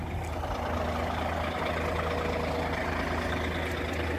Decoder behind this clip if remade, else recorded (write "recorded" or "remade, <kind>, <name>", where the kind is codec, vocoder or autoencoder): recorded